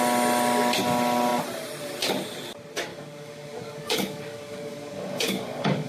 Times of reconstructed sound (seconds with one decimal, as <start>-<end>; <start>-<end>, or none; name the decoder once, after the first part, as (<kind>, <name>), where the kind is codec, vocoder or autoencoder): 2.9-5.9 (codec, DAC)